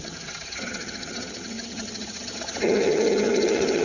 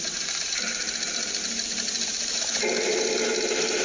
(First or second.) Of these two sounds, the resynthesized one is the first